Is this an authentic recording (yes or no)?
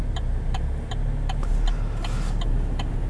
yes